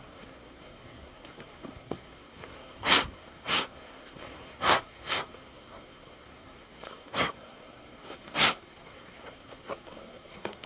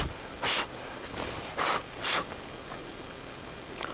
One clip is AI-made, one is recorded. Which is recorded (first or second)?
second